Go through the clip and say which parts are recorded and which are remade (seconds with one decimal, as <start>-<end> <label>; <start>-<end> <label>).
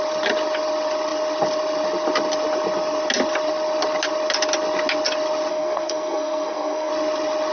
0.0-5.5 recorded; 5.5-6.9 remade; 6.9-7.5 recorded